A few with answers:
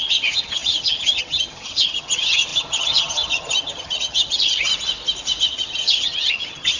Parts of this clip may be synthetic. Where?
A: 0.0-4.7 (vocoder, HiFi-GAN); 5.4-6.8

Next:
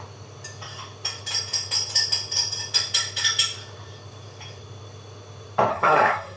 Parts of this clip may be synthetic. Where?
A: 5.7-6.4 (codec, SNAC)

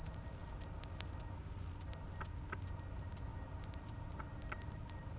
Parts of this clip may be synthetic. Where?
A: none

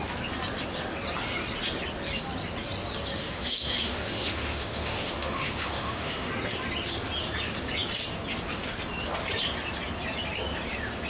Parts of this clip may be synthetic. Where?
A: 3.2-6.3 (autoencoder, DAC-VAE)

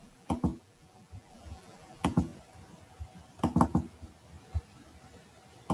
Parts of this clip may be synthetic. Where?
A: 0.0-2.3 (vocoder, BigVGAN v2)

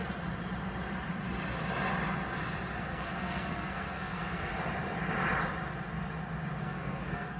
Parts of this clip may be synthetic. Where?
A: 2.8-4.5 (codec, SNAC); 6.6-7.4

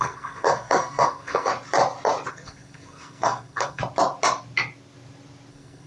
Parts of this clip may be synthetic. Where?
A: 0.0-1.5 (codec, SNAC); 2.3-3.8; 5.5-5.9